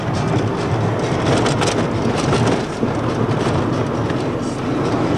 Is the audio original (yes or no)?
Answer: yes